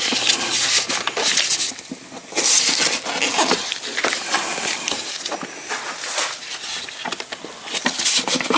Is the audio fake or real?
real